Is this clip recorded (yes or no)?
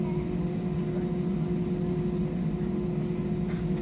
yes